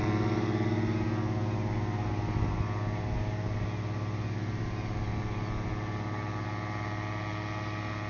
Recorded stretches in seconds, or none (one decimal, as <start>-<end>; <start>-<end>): 0.0-8.1